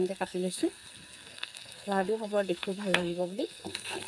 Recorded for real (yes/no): no